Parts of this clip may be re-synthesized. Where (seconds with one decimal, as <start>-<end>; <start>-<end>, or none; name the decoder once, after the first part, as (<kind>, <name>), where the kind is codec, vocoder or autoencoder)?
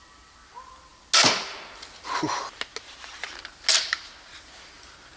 none